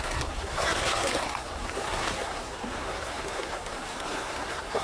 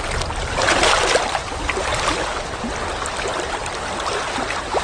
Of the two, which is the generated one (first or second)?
first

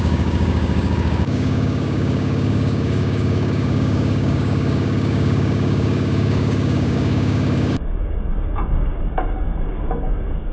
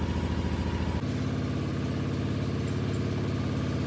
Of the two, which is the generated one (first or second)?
first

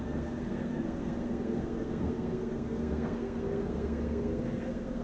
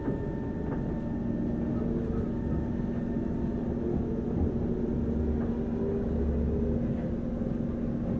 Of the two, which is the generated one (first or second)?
first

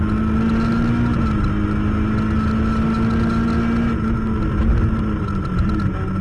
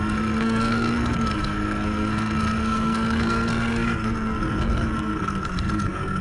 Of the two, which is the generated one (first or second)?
second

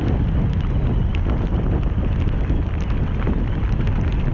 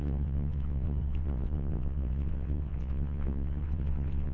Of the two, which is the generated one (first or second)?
second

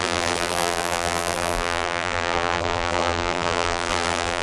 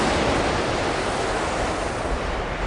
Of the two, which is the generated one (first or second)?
first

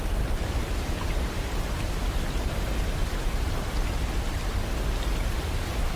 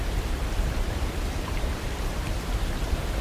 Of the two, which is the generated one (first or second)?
second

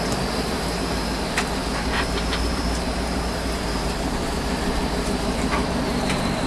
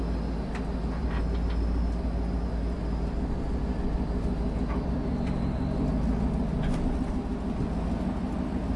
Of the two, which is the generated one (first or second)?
first